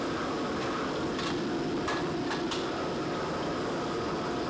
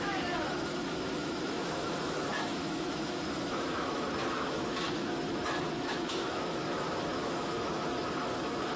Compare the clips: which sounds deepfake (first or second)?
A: second